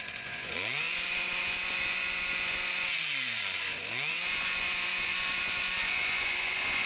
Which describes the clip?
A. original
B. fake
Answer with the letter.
B